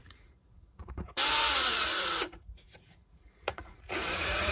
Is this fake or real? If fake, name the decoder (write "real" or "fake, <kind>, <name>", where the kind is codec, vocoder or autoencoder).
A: fake, vocoder, Vocos